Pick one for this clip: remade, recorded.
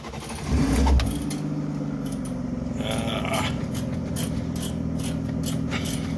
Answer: recorded